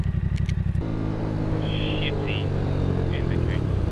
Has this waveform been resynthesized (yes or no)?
no